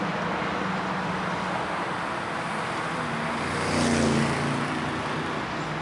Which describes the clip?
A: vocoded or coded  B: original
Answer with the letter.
B